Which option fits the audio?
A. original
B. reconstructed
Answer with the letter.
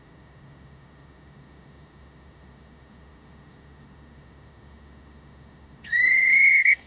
B